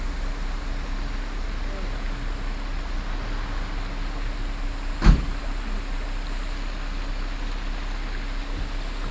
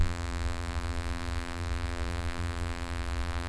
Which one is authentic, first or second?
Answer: first